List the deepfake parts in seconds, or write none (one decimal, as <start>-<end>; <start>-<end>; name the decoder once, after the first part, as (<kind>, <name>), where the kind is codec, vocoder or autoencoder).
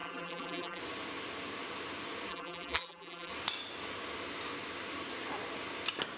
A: 0.0-0.8 (vocoder, BigVGAN v2); 2.3-3.3